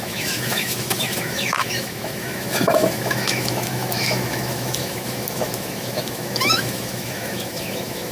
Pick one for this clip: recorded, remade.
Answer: remade